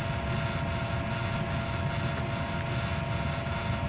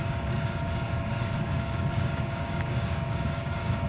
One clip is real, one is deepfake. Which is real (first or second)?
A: first